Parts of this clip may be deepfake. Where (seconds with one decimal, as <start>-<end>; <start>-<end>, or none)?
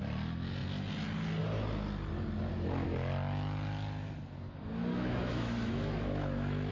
4.9-6.7